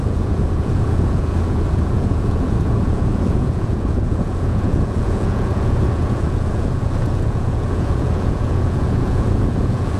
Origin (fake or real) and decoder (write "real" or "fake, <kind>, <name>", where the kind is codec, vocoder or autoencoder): fake, vocoder, Vocos